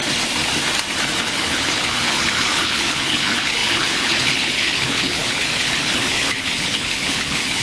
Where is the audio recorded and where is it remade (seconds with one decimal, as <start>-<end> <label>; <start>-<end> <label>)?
0.0-1.2 recorded; 1.2-7.6 remade